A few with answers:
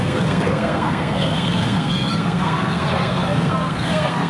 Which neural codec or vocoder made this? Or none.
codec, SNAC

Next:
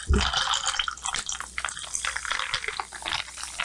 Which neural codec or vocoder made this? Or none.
none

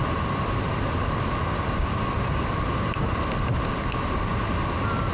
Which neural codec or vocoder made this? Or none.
none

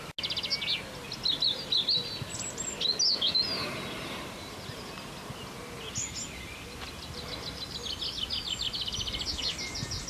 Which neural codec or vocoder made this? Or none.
none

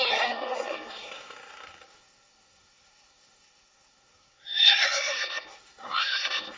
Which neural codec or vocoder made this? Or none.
codec, SNAC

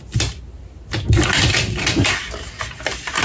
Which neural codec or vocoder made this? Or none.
none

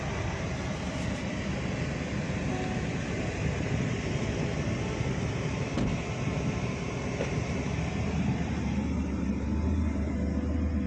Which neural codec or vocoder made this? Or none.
none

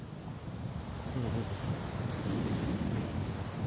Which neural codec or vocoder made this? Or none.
none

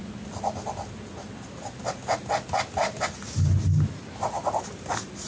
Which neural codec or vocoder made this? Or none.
none